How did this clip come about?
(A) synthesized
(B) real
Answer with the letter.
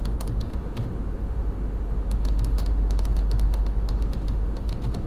A